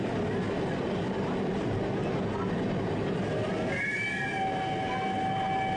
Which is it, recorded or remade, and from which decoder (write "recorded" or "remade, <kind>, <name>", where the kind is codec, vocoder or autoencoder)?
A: recorded